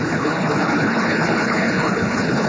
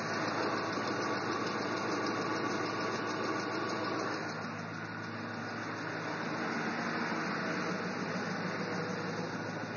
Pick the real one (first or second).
second